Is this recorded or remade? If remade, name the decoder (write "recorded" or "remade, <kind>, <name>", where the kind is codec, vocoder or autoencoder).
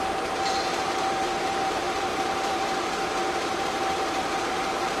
remade, vocoder, BigVGAN v2